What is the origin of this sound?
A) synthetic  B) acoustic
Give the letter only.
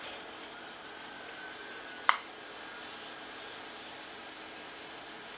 A